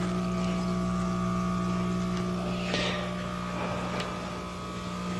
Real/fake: real